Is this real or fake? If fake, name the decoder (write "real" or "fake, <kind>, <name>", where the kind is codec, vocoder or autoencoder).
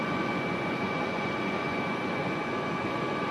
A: fake, vocoder, Vocos